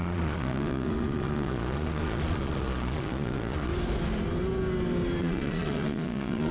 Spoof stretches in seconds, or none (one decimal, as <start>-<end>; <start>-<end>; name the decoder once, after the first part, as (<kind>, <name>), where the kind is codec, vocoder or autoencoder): 0.0-3.7 (vocoder, Vocos); 5.2-6.5